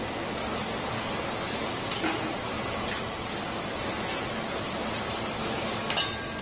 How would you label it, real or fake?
real